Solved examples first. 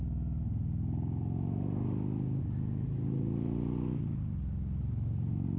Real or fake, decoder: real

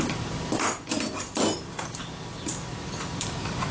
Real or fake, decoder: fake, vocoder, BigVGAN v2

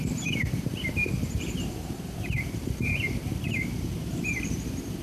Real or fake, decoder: fake, vocoder, BigVGAN v2